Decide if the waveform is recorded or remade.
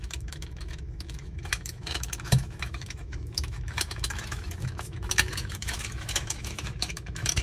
remade